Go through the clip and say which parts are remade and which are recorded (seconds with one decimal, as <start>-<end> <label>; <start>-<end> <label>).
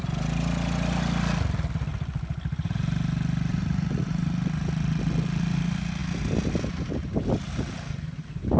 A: 0.0-3.5 recorded; 3.5-4.3 remade; 4.3-8.6 recorded